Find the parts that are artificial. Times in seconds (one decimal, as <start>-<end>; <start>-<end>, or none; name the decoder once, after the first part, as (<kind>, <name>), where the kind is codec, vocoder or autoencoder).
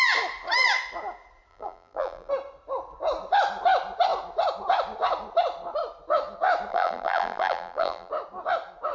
1.5-2.3 (vocoder, BigVGAN v2); 6.7-8.1